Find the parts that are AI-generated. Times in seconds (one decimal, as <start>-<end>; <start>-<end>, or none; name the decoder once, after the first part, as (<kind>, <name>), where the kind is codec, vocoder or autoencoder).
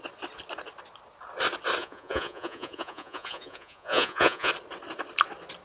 1.8-4.5 (vocoder, Vocos)